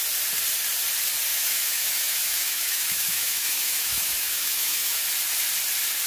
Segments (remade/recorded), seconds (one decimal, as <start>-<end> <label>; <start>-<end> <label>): 0.0-1.3 recorded; 1.3-5.0 remade; 5.0-6.1 recorded